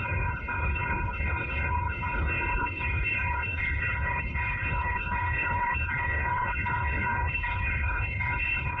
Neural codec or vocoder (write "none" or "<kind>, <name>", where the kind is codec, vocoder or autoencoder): codec, HILCodec